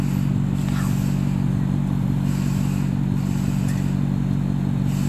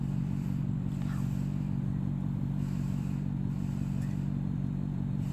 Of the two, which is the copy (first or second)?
second